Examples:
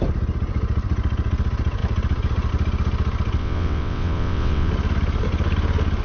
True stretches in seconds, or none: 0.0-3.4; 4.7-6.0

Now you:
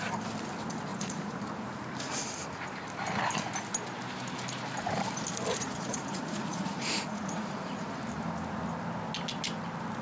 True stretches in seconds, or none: 0.0-0.9; 1.4-5.5; 7.9-10.0

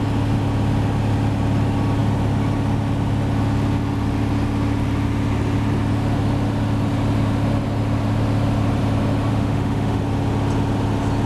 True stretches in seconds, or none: 0.0-9.3; 10.0-11.3

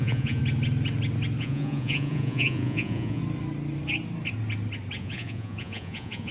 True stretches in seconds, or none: 0.4-1.4; 3.2-5.0

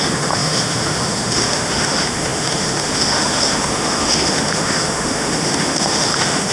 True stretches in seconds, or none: none

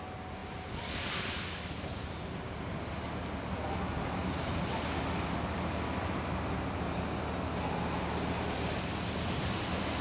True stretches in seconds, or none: 0.0-10.0

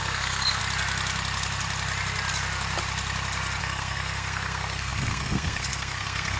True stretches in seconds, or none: 0.6-3.6

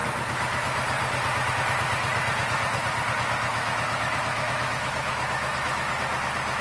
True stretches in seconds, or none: 0.0-3.5; 5.9-6.6